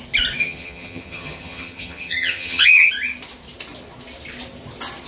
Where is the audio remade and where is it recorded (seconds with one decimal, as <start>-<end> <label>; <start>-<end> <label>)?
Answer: 0.0-0.4 recorded; 0.4-2.9 remade; 2.9-5.1 recorded